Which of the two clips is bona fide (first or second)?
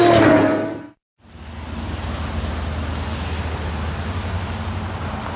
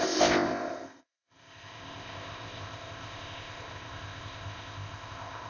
first